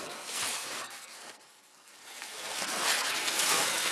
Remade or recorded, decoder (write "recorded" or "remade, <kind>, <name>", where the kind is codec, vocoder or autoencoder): remade, codec, SNAC